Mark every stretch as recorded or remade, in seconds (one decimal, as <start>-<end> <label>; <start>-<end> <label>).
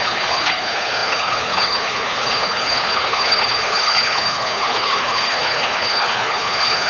0.0-6.9 remade